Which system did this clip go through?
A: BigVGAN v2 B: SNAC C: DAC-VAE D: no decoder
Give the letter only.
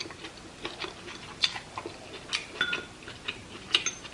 D